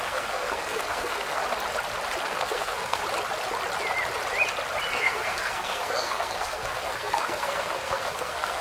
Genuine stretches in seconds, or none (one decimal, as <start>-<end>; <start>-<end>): 1.4-2.2; 3.0-4.9